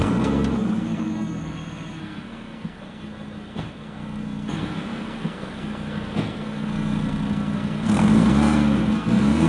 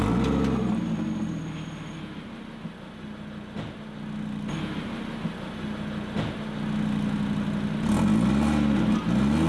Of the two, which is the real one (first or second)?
second